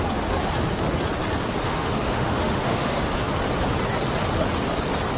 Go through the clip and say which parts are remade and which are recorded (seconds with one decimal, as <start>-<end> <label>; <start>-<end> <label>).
0.0-1.6 recorded; 1.6-3.1 remade; 3.1-5.2 recorded

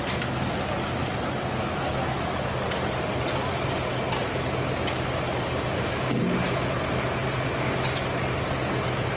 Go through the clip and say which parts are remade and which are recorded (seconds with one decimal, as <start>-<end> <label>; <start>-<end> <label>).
0.0-1.6 recorded; 1.6-2.6 remade; 2.6-9.2 recorded

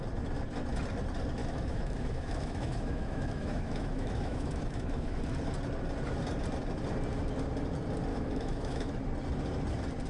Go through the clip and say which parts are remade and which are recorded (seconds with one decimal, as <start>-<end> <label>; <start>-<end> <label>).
0.0-1.4 recorded; 1.4-5.2 remade; 5.2-8.1 recorded; 8.1-8.9 remade; 8.9-10.1 recorded

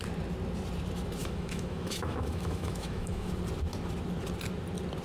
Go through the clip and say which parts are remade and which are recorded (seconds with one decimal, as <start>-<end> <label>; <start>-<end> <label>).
0.0-1.2 recorded; 1.2-3.3 remade; 3.3-5.0 recorded

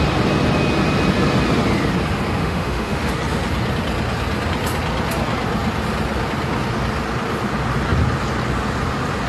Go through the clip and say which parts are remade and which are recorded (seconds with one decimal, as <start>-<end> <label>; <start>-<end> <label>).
0.0-2.4 recorded; 2.4-3.1 remade; 3.1-9.3 recorded

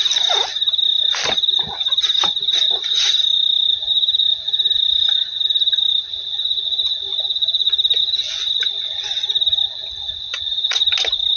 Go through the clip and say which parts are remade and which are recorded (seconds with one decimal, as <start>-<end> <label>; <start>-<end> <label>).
0.0-11.4 recorded

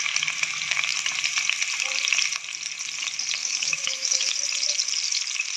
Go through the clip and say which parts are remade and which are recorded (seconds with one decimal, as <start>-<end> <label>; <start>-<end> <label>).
0.0-3.4 recorded; 3.4-4.4 remade; 4.4-5.6 recorded